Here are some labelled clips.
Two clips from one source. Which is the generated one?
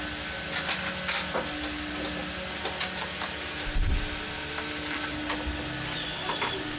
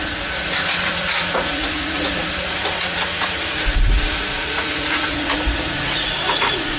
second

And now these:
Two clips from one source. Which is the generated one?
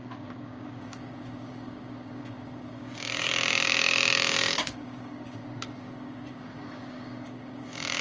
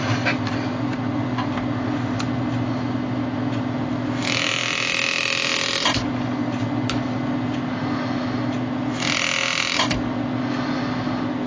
first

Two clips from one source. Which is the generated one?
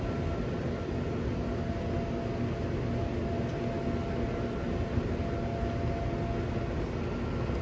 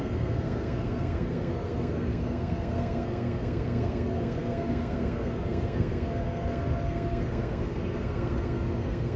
second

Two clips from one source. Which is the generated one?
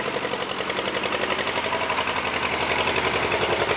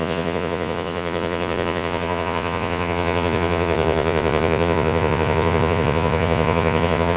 second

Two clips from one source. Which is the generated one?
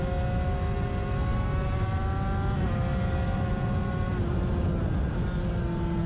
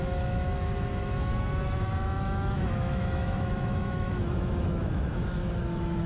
second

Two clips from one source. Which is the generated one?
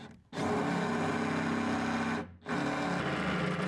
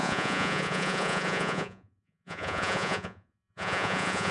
second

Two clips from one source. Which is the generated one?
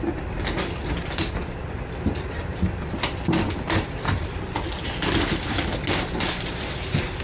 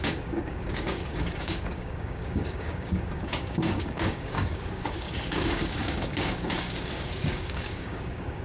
second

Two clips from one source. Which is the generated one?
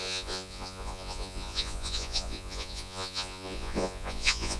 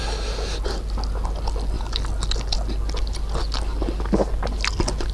first